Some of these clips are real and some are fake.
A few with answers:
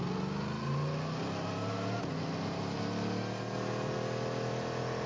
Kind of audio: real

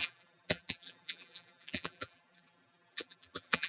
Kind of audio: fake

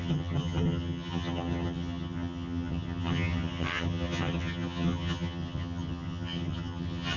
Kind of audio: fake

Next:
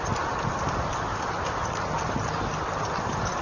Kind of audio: real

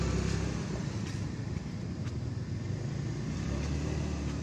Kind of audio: real